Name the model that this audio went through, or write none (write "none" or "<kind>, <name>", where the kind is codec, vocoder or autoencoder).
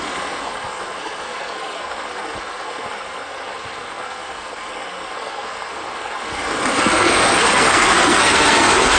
codec, SNAC